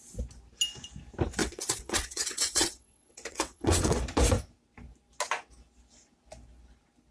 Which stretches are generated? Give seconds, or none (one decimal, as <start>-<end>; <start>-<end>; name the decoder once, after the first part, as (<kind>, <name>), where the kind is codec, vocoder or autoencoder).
1.4-4.0 (vocoder, WaveNeXt)